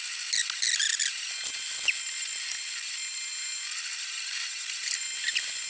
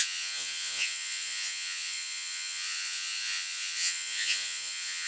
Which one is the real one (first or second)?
first